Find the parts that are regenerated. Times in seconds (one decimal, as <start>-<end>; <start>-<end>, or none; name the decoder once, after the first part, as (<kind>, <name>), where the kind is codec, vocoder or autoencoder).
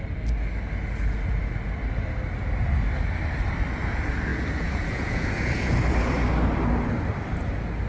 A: 4.3-5.8 (vocoder, Vocos)